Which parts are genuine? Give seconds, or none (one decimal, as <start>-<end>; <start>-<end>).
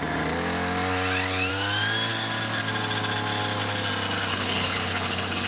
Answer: 0.0-4.3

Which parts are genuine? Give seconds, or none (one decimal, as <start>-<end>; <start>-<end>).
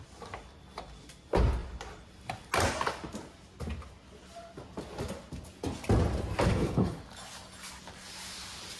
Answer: 0.0-6.5; 7.0-8.8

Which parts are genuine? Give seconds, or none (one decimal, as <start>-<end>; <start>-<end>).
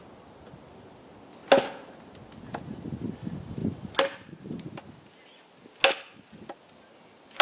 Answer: 0.0-7.4